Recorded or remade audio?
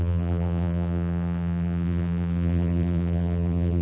remade